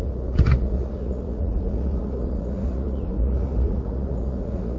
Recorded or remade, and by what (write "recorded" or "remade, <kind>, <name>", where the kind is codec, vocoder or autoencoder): remade, vocoder, Vocos